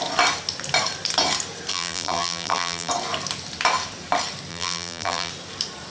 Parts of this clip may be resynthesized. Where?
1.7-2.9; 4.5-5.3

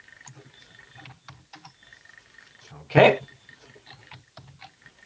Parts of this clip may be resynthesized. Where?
none